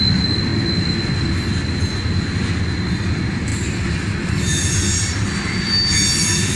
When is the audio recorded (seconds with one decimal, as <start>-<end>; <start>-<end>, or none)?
0.0-6.6